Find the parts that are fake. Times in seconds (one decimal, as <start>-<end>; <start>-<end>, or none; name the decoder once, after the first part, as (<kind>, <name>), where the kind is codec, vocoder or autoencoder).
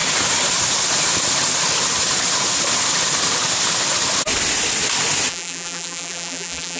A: 5.3-6.8 (vocoder, BigVGAN v2)